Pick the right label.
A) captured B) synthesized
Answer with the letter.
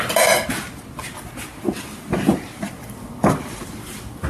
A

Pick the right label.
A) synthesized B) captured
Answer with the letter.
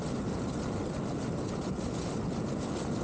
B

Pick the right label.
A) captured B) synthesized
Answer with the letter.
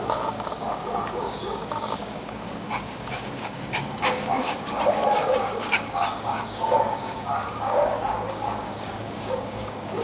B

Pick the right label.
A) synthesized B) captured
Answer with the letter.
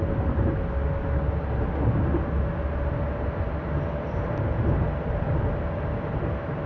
B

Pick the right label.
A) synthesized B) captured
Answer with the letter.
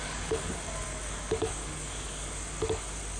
A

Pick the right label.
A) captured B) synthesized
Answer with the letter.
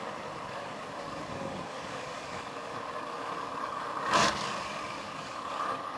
B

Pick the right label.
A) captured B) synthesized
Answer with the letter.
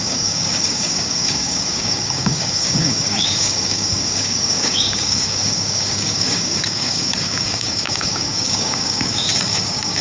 B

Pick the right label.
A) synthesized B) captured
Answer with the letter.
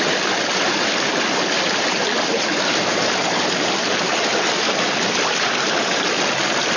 B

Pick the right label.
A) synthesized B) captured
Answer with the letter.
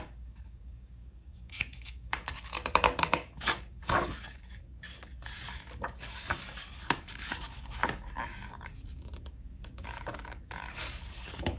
A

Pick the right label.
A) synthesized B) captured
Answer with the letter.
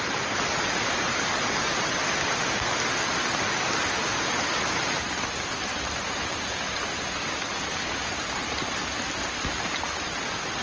B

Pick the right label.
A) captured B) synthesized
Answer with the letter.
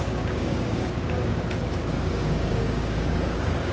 B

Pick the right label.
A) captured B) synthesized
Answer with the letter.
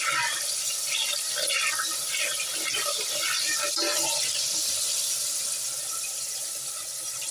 A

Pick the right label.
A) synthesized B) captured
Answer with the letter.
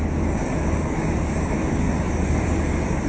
A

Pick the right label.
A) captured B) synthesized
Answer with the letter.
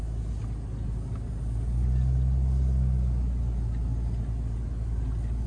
A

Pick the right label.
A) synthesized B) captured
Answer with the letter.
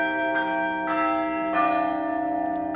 B